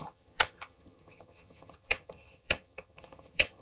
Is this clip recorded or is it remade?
remade